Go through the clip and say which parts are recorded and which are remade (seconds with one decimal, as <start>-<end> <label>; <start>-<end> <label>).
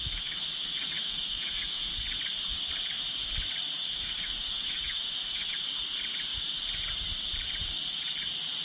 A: 0.0-1.9 remade; 1.9-3.9 recorded; 3.9-5.5 remade; 5.5-8.6 recorded